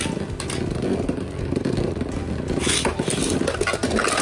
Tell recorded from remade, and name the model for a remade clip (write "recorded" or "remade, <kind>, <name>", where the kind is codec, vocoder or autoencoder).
recorded